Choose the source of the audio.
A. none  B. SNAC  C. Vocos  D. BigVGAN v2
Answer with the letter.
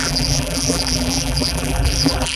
D